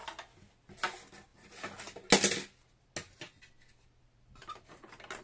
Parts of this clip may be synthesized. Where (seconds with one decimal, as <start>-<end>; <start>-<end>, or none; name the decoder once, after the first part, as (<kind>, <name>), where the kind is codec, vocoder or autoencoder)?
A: none